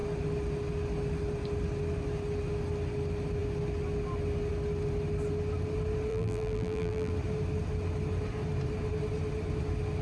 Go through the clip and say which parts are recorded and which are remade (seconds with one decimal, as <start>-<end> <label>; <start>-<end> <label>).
0.0-6.1 recorded; 6.1-7.1 remade; 7.1-10.0 recorded